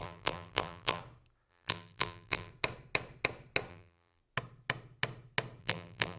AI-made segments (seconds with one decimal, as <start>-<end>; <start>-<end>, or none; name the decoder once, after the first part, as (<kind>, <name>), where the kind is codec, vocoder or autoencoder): 0.0-1.0 (vocoder, BigVGAN v2); 1.5-2.5; 3.7-4.2; 5.6-6.2